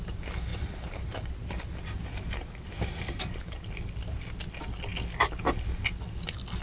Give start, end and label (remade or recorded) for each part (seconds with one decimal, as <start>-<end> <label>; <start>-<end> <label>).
0.0-0.5 recorded; 0.5-4.5 remade; 4.5-6.6 recorded